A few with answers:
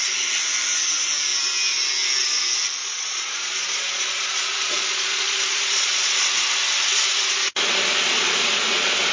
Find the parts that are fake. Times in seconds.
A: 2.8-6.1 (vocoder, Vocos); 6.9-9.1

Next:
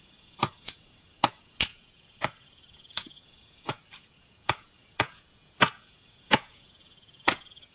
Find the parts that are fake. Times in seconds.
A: 0.0-7.7 (vocoder, Vocos)